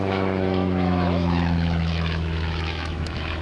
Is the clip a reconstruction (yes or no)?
yes